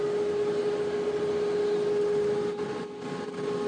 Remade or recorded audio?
recorded